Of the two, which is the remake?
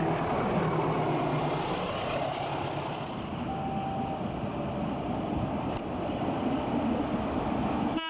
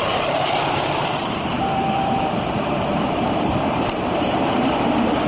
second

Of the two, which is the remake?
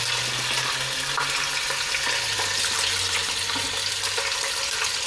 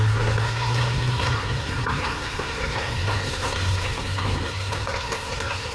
second